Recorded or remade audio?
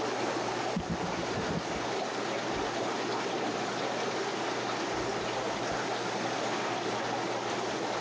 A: recorded